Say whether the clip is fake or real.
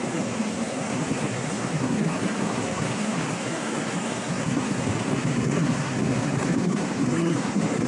fake